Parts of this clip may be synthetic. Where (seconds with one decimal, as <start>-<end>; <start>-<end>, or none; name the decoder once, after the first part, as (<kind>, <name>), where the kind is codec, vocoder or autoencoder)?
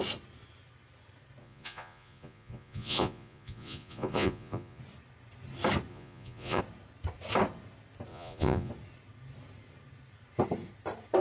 1.4-4.8 (vocoder, Vocos); 5.9-6.6; 8.1-8.7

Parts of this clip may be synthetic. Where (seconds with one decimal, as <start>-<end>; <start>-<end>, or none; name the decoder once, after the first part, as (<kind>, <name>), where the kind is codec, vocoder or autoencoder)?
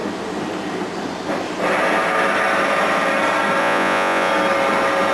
3.6-4.3 (vocoder, Vocos)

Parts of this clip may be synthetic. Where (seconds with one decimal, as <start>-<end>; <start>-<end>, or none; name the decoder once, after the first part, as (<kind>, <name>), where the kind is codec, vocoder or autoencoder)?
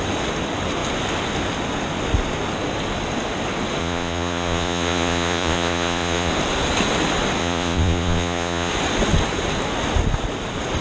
3.8-6.3 (vocoder, Vocos); 7.4-8.7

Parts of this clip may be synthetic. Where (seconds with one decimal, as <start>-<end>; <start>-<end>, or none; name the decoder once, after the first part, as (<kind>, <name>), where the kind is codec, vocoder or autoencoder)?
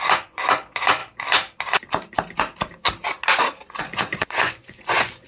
0.0-1.0 (vocoder, Vocos); 3.8-5.3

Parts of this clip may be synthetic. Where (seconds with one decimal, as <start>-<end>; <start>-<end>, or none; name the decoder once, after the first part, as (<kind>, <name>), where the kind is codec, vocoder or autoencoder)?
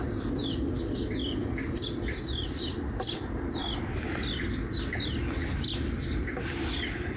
none